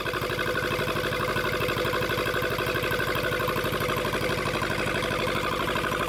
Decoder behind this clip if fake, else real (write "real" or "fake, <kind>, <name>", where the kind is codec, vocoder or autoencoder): real